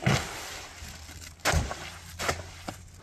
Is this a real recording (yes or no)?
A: yes